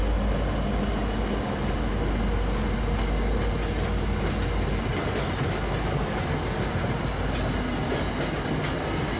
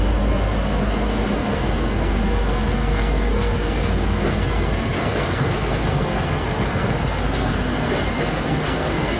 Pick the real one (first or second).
first